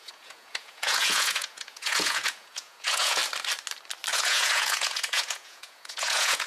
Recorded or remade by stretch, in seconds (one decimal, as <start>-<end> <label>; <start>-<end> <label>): 0.0-3.2 remade; 3.2-4.1 recorded; 4.1-6.5 remade